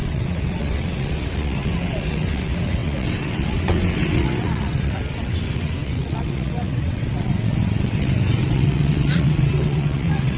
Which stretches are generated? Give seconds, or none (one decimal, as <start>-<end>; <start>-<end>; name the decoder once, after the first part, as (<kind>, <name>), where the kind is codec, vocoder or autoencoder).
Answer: 0.0-10.4 (vocoder, WaveNeXt)